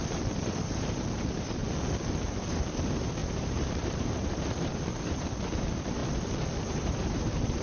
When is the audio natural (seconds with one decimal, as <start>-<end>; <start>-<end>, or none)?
0.0-0.6; 1.6-2.2; 6.0-6.6